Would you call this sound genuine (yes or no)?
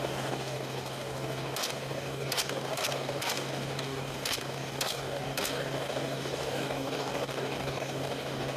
no